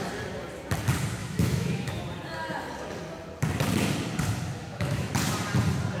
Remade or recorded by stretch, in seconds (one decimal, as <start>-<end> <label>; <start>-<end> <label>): 0.0-1.2 recorded; 1.2-2.0 remade; 2.0-4.6 recorded; 4.6-5.1 remade; 5.1-6.0 recorded